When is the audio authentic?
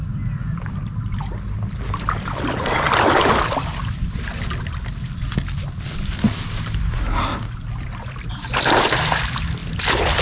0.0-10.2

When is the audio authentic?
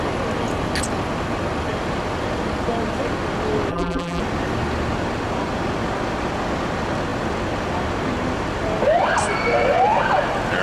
0.0-3.7; 4.2-10.6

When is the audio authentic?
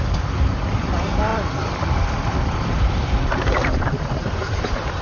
0.0-1.3; 4.3-5.0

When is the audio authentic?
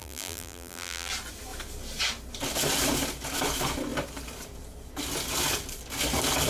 1.1-6.5